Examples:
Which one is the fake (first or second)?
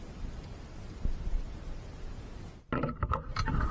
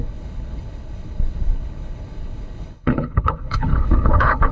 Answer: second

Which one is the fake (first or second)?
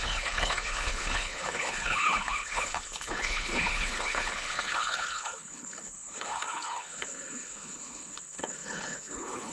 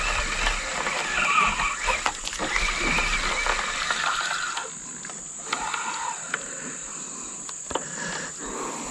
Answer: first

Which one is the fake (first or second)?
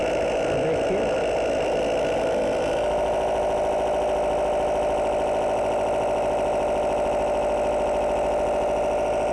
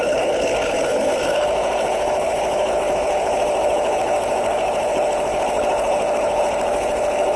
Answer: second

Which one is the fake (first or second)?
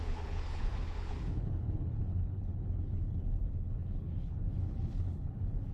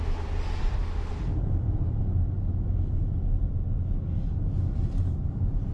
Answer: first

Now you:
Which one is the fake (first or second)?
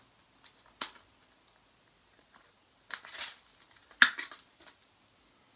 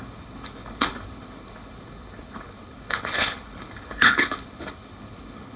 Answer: second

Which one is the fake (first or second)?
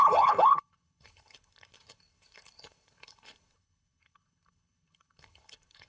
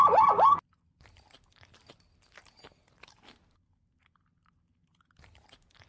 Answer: first